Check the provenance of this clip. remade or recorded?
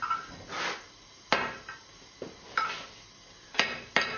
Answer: recorded